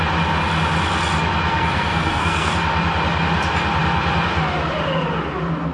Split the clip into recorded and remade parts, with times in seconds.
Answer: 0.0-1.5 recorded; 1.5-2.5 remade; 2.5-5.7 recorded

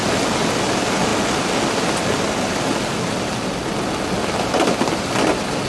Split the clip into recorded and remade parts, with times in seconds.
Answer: 0.0-5.7 recorded

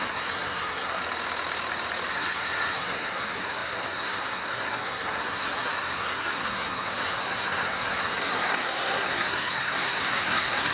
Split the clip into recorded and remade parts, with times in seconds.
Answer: 0.0-1.0 remade; 1.0-2.1 recorded; 2.1-10.7 remade

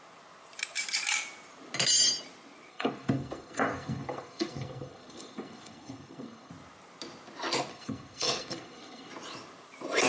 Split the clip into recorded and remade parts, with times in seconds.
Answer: 0.0-2.7 recorded; 2.7-6.5 remade; 6.5-7.7 recorded; 7.7-9.1 remade; 9.1-10.1 recorded

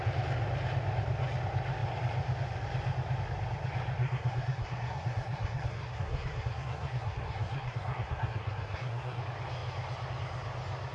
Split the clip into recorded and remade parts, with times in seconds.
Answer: 0.0-4.0 recorded; 4.0-9.2 remade; 9.2-10.9 recorded

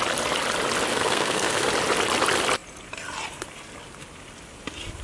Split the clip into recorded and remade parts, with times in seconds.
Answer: 0.0-0.9 recorded; 0.9-1.7 remade; 1.7-5.0 recorded